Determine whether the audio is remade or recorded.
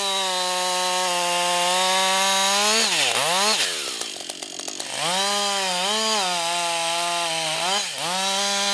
recorded